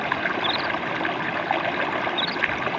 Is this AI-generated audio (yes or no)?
no